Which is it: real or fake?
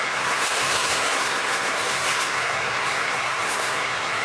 fake